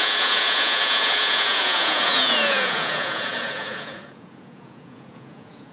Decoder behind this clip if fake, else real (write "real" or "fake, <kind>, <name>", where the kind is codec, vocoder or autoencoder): fake, vocoder, Vocos